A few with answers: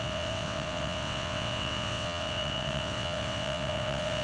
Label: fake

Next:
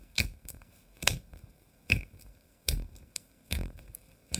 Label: fake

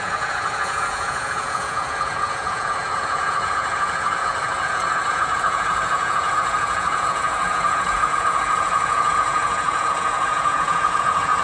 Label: fake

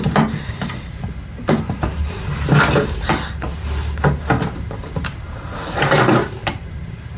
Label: real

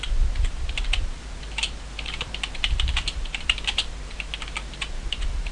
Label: fake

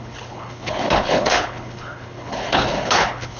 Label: fake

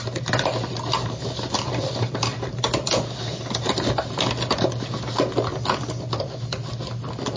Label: real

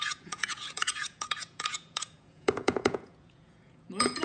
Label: fake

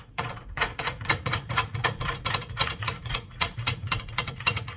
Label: fake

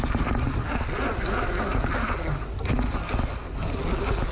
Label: real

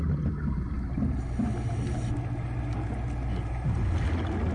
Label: real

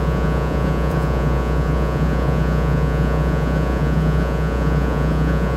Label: fake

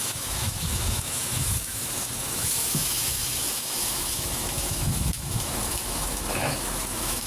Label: fake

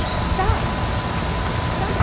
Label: real